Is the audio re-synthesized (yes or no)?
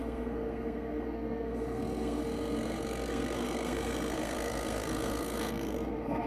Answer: yes